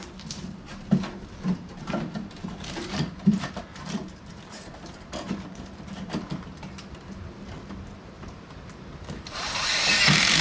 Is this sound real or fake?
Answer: fake